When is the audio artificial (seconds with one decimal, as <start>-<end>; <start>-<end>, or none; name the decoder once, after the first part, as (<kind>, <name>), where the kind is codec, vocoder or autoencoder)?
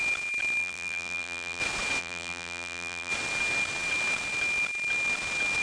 0.6-1.6 (vocoder, BigVGAN v2); 2.0-3.1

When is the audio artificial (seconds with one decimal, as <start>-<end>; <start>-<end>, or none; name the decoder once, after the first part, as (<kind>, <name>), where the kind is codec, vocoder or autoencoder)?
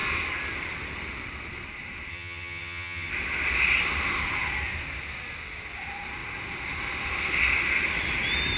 2.1-3.1 (vocoder, HiFi-GAN)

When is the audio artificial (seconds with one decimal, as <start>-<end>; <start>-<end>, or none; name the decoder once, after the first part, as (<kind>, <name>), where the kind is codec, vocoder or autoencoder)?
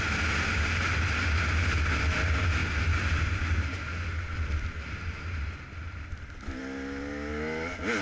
none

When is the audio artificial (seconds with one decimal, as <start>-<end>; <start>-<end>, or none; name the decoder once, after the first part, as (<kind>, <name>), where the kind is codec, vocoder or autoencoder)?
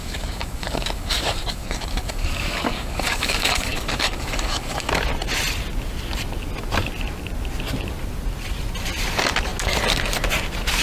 0.0-4.9 (codec, DAC)